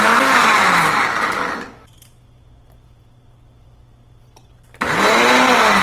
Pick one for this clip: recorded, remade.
recorded